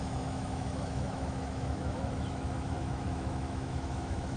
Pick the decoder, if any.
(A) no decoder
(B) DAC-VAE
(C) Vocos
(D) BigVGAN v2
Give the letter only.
B